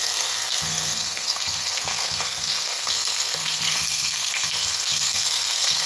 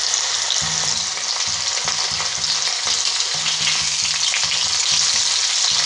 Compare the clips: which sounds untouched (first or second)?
second